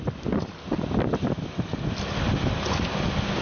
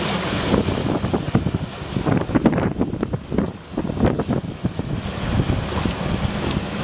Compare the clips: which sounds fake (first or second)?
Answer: second